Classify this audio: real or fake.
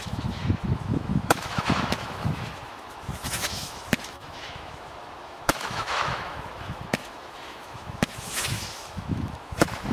fake